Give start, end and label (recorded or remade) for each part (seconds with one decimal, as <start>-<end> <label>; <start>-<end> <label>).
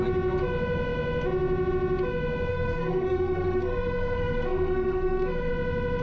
0.0-2.5 recorded; 2.5-5.5 remade; 5.5-6.0 recorded